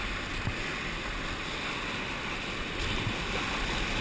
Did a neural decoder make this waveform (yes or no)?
no